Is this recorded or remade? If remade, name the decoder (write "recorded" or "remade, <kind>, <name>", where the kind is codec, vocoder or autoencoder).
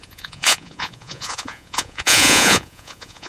remade, vocoder, Vocos